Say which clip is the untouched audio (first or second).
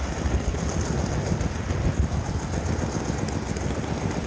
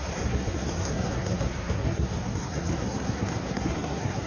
first